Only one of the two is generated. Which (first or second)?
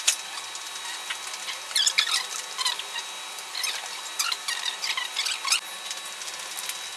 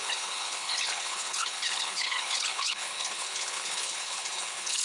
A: second